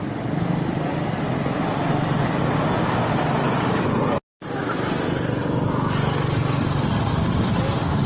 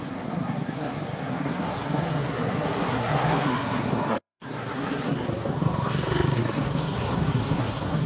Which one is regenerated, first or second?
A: second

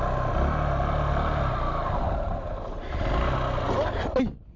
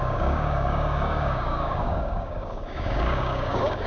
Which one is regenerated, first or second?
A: second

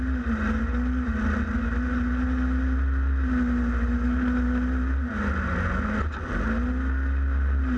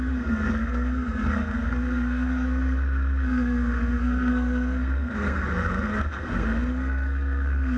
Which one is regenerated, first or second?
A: second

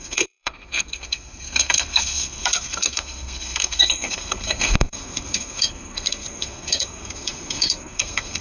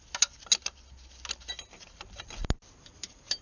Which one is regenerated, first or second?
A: first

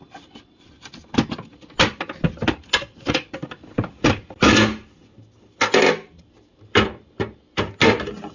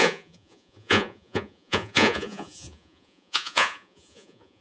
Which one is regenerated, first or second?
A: second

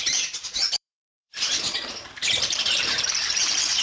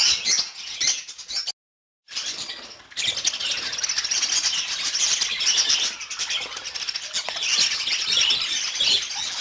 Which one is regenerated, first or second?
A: first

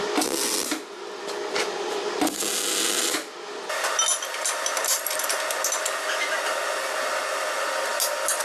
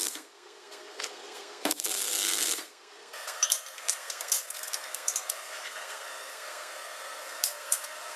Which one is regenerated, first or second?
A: second